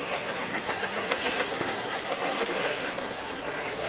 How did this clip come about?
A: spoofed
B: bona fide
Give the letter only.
A